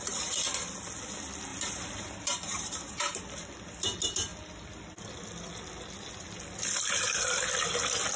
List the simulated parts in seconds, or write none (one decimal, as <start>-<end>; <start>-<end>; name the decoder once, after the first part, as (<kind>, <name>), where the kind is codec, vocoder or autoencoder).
1.5-3.2 (vocoder, BigVGAN v2)